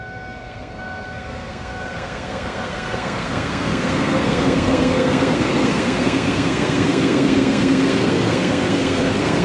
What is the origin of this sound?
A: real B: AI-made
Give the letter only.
B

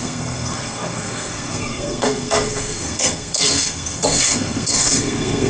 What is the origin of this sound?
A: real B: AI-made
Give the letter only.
B